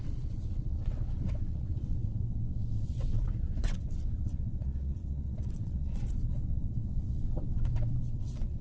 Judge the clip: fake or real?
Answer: fake